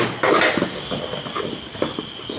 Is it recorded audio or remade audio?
recorded